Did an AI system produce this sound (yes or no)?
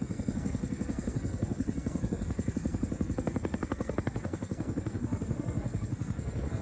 yes